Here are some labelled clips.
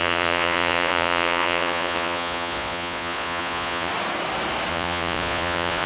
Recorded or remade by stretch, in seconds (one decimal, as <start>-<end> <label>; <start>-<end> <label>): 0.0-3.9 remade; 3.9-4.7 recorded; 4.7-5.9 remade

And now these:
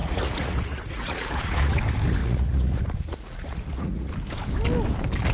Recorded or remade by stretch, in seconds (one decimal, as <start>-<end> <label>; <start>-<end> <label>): 0.0-1.8 remade; 1.8-2.2 recorded; 2.2-4.1 remade; 4.1-5.3 recorded

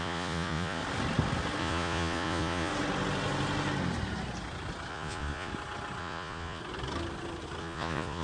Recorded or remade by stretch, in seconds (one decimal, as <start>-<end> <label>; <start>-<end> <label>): 0.0-0.8 remade; 0.8-1.6 recorded; 1.6-2.7 remade; 2.7-4.9 recorded; 4.9-5.5 remade; 5.5-6.0 recorded; 6.0-6.6 remade; 6.6-7.6 recorded; 7.6-8.2 remade

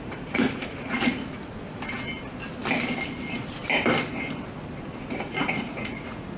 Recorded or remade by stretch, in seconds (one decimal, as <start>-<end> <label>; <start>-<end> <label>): 0.0-1.2 remade; 1.2-5.0 recorded; 5.0-6.4 remade